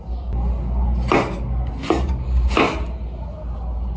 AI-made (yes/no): no